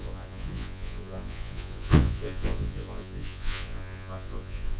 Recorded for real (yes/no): no